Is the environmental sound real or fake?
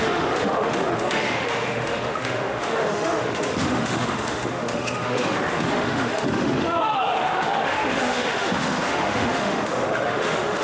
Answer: fake